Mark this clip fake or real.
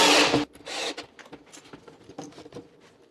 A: real